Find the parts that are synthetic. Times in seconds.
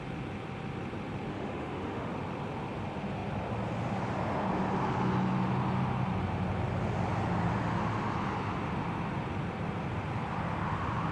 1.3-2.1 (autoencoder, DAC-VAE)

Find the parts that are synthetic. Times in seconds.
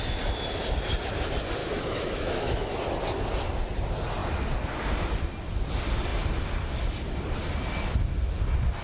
1.6-2.8 (autoencoder, DAC-VAE)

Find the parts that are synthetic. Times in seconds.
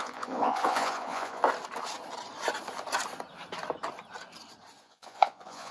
0.0-1.4 (vocoder, Vocos); 4.8-5.7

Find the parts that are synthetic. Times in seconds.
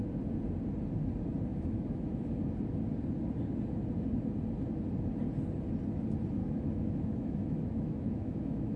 1.5-2.3 (autoencoder, DAC-VAE); 6.4-8.8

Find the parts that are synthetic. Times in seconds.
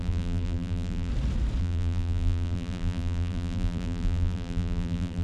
0.0-1.1 (vocoder, BigVGAN v2); 1.6-5.2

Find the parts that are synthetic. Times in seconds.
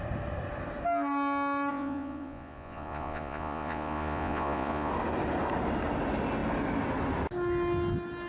1.7-4.9 (vocoder, Vocos)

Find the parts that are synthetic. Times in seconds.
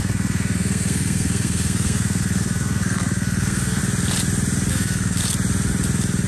0.0-3.8 (codec, SNAC); 4.7-5.2